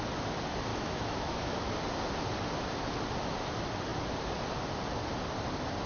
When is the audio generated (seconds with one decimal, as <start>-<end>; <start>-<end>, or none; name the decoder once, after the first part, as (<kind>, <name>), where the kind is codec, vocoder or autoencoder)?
0.7-1.7 (autoencoder, DAC-VAE)